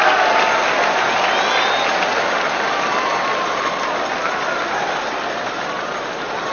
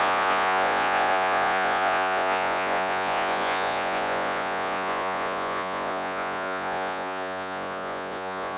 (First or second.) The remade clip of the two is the second